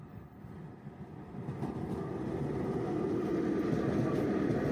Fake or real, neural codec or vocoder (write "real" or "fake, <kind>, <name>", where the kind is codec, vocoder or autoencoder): real